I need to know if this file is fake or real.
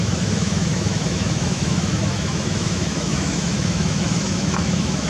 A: fake